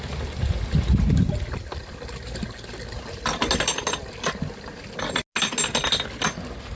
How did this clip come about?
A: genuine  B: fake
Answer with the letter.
A